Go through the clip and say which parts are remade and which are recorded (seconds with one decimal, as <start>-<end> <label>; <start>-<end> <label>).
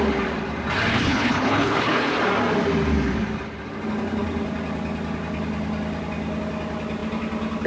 0.0-0.9 recorded; 0.9-2.1 remade; 2.1-7.7 recorded